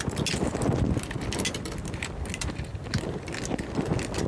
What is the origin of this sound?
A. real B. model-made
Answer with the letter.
A